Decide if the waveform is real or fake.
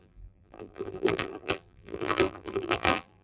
fake